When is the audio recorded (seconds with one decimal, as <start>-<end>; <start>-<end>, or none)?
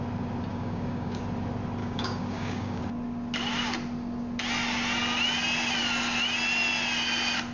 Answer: 0.0-0.5; 1.2-1.8; 2.8-7.5